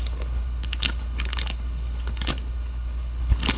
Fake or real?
fake